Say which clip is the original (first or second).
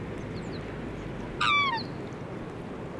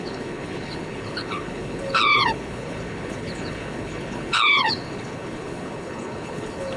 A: first